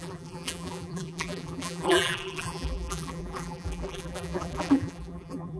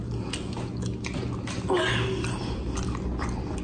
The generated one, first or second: first